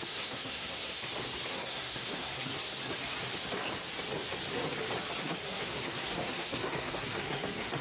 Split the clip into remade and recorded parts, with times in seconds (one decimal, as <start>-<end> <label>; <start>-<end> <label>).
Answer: 0.0-1.0 remade; 1.0-1.5 recorded; 1.5-2.7 remade; 2.7-5.2 recorded; 5.2-7.8 remade